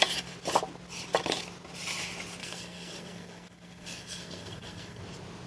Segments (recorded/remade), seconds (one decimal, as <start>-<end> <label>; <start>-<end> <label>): 0.0-2.4 recorded; 2.4-5.0 remade; 5.0-5.5 recorded